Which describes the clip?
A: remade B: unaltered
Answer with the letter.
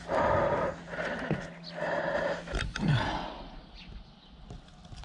B